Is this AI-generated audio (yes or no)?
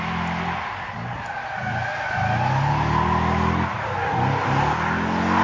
no